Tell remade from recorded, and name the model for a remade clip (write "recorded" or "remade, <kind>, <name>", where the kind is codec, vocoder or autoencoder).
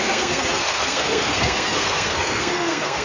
remade, codec, SNAC